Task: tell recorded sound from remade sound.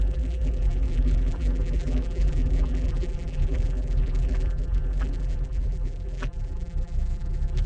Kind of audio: remade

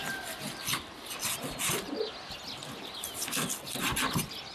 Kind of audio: recorded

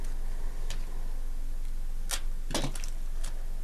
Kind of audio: recorded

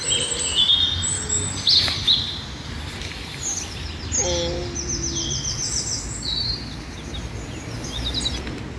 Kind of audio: recorded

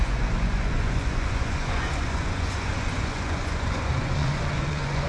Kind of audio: remade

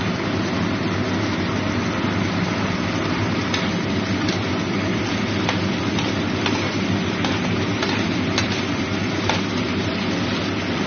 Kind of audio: recorded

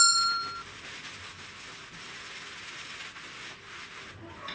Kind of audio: remade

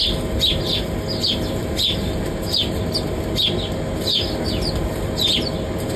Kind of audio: recorded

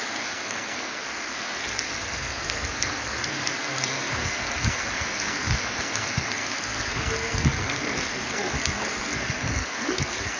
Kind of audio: remade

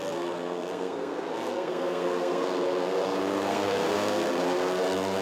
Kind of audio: remade